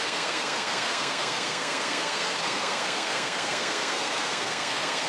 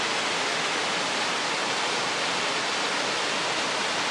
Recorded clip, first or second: second